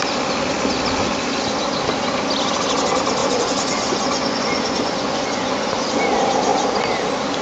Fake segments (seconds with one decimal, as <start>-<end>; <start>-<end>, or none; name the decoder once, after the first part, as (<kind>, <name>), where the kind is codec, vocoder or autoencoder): 3.2-6.0 (vocoder, Vocos)